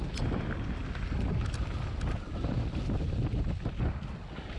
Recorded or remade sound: recorded